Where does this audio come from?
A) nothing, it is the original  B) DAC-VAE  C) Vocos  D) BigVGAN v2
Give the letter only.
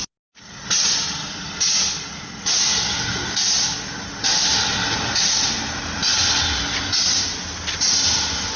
A